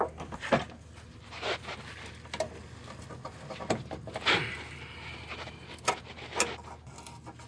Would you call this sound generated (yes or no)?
no